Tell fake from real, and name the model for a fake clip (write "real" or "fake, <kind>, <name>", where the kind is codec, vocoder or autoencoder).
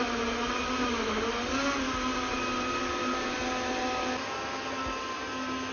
real